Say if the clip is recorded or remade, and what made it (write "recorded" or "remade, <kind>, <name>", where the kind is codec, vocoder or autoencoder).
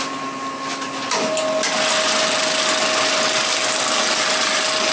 recorded